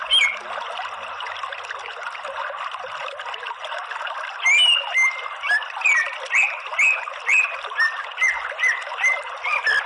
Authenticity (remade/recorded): recorded